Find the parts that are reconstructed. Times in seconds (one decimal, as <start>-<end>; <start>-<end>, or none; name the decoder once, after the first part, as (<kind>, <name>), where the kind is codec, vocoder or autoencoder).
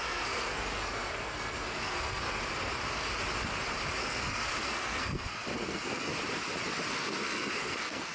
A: 0.0-2.4 (codec, SNAC); 4.0-6.1; 6.9-8.1